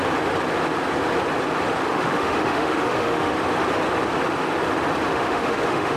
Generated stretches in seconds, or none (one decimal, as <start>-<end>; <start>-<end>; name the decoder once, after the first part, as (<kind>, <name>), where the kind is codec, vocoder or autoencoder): 1.9-3.3 (autoencoder, DAC-VAE); 5.1-6.0